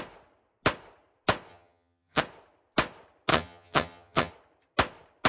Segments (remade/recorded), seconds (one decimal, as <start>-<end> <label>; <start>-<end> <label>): 0.0-1.5 recorded; 1.5-2.2 remade; 2.2-3.3 recorded; 3.3-4.3 remade; 4.3-5.3 recorded